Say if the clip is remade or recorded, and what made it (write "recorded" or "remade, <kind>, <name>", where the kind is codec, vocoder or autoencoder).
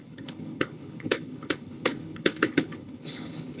remade, codec, HILCodec